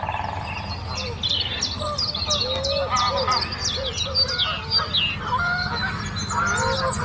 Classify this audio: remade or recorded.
recorded